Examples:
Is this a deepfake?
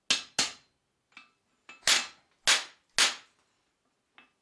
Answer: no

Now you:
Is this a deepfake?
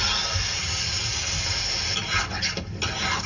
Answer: no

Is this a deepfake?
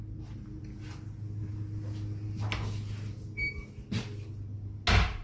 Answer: no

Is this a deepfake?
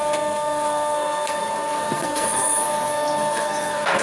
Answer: yes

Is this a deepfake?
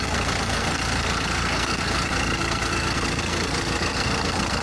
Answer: yes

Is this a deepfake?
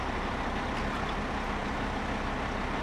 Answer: no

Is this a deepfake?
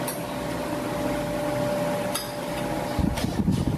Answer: no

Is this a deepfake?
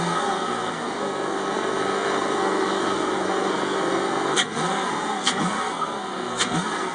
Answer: yes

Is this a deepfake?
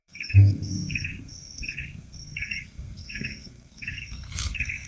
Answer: yes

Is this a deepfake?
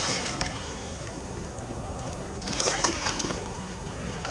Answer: yes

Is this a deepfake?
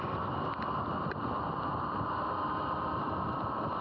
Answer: no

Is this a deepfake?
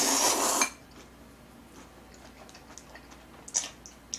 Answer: no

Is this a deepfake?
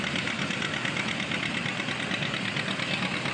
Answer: no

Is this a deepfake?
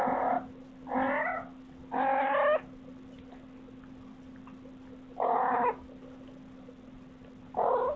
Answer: no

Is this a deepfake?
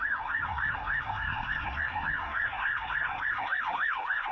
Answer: yes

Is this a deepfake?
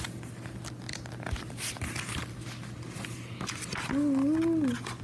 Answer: no